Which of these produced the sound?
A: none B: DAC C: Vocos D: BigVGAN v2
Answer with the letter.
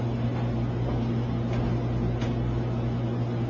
A